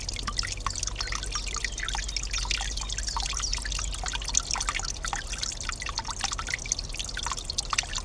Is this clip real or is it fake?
real